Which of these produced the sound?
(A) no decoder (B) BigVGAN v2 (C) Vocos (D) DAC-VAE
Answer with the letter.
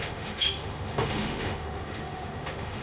D